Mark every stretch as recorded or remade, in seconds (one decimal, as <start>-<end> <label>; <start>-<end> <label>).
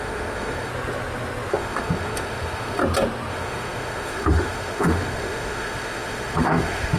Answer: 0.0-0.7 remade; 0.7-1.5 recorded; 1.5-2.8 remade; 2.8-3.3 recorded; 3.3-7.0 remade